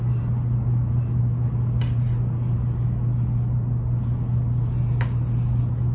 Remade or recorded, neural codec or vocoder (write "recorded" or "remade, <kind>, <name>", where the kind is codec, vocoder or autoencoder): recorded